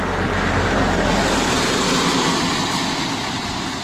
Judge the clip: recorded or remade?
recorded